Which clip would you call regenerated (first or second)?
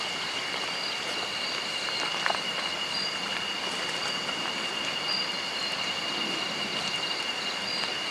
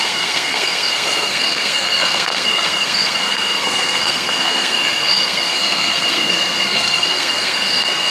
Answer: second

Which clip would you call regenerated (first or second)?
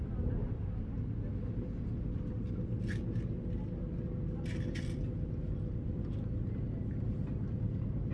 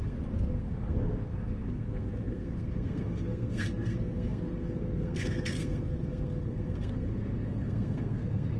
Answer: second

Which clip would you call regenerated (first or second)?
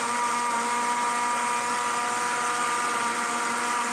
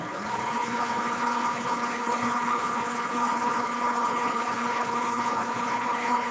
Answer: second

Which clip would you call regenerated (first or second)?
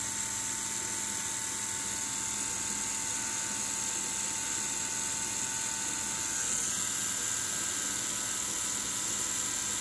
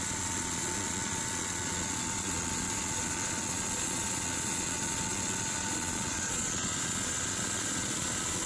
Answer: second